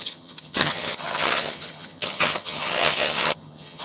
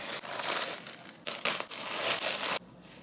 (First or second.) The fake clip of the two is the first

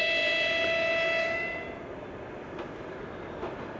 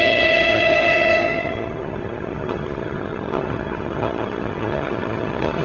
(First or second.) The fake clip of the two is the second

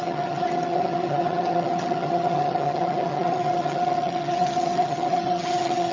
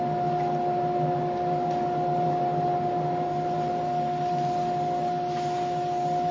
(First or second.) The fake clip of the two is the first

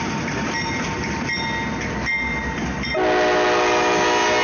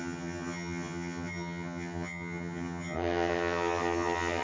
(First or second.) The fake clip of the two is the second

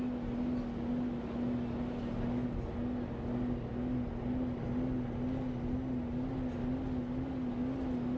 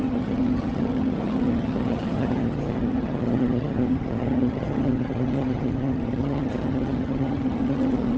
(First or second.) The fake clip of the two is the second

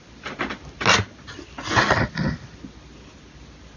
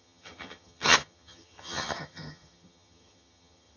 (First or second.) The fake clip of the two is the second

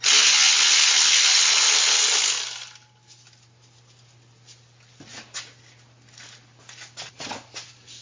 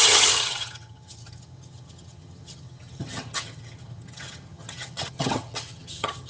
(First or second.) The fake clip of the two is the second